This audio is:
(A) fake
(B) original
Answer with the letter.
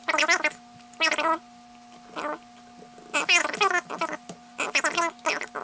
B